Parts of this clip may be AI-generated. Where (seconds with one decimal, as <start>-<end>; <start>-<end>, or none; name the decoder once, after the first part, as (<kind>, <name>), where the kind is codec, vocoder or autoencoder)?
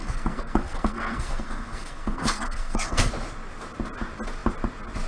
0.0-3.1 (codec, SNAC)